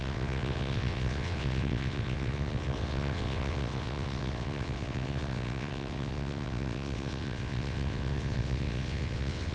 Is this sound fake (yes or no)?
yes